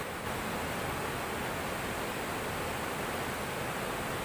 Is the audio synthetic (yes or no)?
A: no